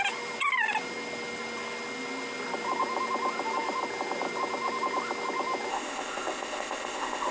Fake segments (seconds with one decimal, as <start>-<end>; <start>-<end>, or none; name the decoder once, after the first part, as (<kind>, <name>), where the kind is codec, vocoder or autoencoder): 5.7-7.3 (codec, ZipCodec)